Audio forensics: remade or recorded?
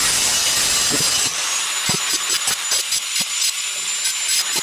recorded